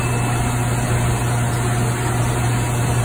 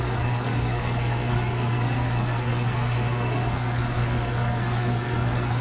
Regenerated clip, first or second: second